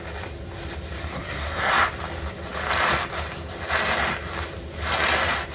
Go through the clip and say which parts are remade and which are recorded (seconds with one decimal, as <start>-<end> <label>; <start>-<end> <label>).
0.0-1.0 recorded; 1.0-1.7 remade; 1.7-5.5 recorded